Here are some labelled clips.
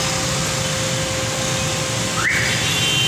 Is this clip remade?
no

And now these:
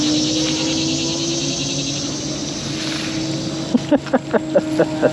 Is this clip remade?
no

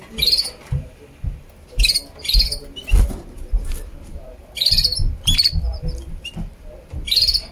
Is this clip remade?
no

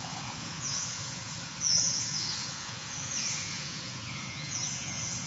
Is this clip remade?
yes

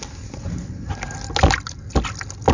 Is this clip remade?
no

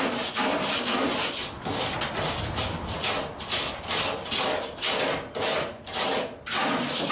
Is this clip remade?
no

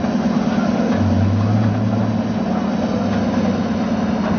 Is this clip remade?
no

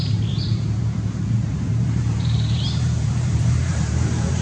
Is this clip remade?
yes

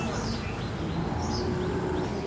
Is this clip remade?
no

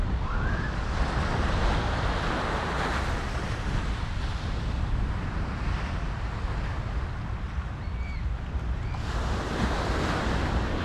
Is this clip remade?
no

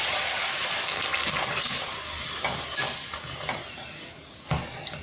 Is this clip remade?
no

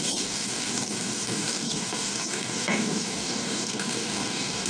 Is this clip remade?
yes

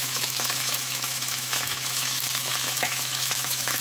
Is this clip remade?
yes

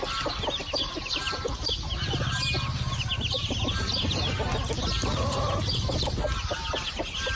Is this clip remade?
no